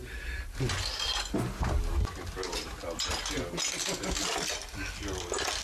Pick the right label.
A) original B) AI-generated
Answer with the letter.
A